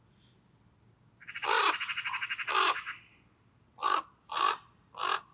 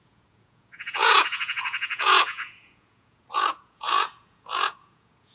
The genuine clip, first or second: first